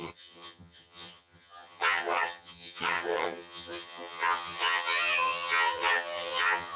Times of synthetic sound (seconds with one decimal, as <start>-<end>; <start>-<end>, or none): 0.0-6.8